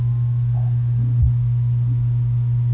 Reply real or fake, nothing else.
real